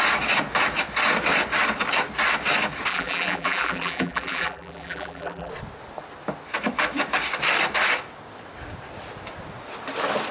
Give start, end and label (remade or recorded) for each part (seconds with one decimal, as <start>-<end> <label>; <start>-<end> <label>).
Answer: 0.0-2.9 recorded; 2.9-5.5 remade; 5.5-10.3 recorded